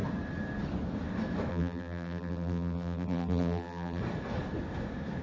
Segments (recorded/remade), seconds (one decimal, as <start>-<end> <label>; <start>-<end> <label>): 0.0-1.5 recorded; 1.5-4.0 remade; 4.0-5.2 recorded